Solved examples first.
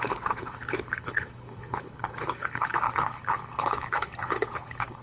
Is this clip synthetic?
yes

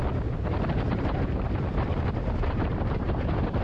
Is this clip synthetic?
no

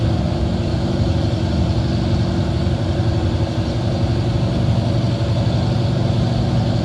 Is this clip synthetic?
no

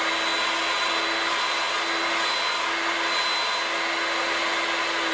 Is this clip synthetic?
no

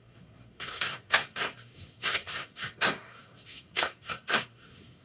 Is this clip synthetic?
yes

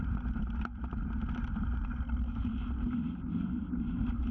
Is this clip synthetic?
no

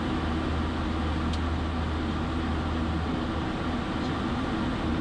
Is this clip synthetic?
no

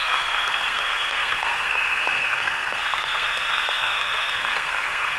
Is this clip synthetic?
yes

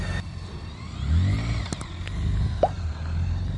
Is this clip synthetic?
no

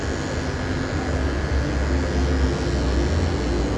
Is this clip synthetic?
no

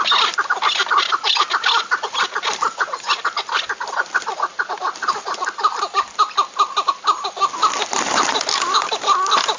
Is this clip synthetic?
no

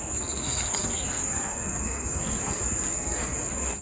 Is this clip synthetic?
yes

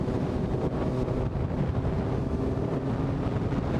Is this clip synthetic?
no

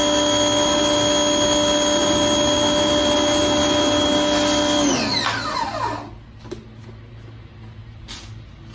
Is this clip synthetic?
no